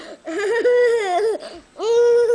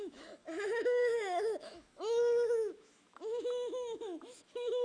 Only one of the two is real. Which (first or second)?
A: first